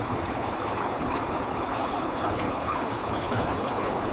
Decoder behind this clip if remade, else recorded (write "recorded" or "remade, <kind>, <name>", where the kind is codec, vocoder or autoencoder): remade, codec, HILCodec